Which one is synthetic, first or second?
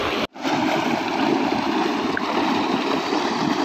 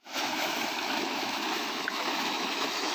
second